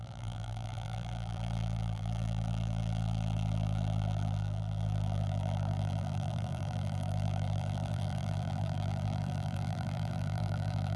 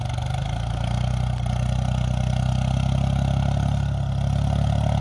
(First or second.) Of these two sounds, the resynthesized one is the first